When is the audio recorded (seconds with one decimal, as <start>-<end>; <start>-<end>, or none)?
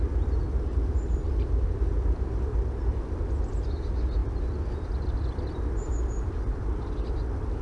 0.0-0.4; 1.5-2.5; 3.5-4.2; 6.6-7.6